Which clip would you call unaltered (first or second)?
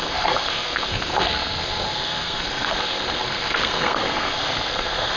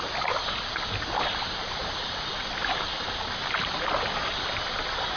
second